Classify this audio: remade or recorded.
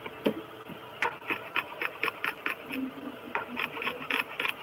recorded